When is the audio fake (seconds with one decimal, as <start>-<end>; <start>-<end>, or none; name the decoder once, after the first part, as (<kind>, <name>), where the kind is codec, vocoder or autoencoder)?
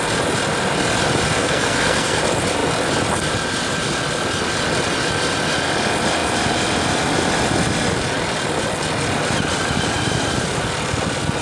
1.4-2.2 (codec, SNAC)